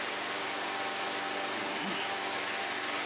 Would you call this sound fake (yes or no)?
no